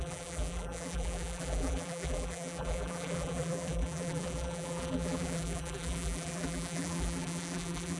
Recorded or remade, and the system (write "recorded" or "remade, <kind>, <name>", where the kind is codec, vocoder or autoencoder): remade, vocoder, BigVGAN v2